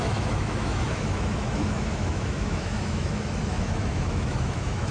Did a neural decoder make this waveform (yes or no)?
yes